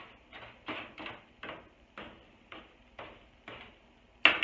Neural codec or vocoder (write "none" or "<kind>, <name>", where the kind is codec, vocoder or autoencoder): none